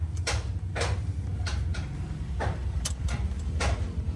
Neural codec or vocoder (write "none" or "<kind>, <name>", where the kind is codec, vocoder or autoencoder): none